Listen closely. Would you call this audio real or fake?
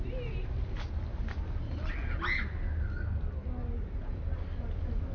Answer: real